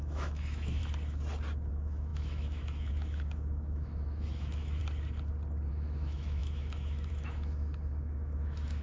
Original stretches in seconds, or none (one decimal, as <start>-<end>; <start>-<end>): 0.8-1.7; 4.8-5.7